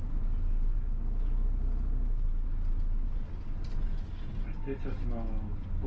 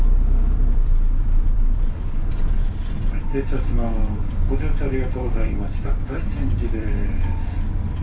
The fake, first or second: second